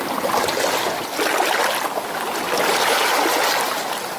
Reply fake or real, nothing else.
real